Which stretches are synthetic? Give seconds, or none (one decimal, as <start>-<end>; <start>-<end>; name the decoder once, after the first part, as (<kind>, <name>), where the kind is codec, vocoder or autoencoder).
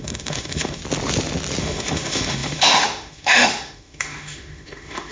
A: 0.0-0.8 (autoencoder, DAC-VAE); 1.6-5.1